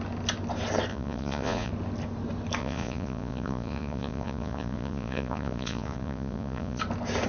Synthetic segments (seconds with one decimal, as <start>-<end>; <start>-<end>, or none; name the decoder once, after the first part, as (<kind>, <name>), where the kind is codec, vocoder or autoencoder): 0.9-1.7 (vocoder, Vocos); 2.6-6.8